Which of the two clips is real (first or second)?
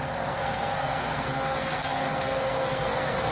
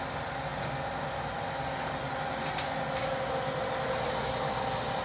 second